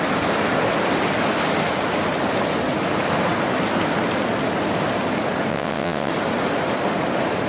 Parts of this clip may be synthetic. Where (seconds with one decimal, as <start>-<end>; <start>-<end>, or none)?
5.5-6.1